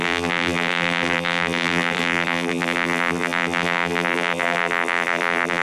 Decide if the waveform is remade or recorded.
remade